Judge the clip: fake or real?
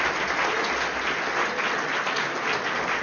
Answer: real